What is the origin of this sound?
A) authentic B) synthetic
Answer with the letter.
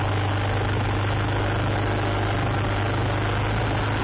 A